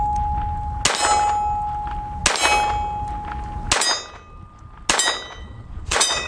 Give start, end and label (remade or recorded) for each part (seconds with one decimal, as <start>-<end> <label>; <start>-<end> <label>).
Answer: 0.0-5.4 recorded; 5.4-6.3 remade